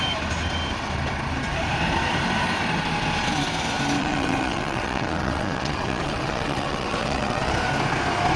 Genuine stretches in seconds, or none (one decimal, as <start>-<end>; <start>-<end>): 0.0-4.0; 7.5-8.4